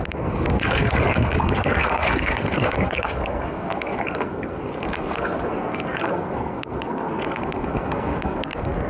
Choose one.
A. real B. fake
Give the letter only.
B